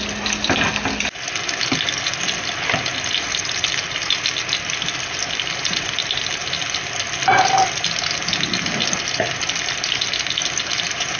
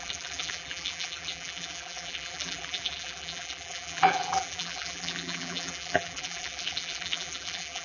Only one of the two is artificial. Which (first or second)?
second